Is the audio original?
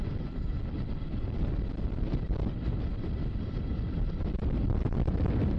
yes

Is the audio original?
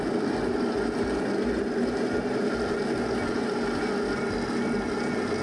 yes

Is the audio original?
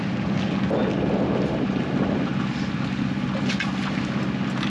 yes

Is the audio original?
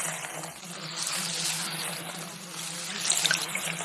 yes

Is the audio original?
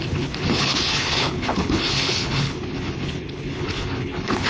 no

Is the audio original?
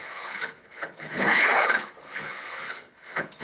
no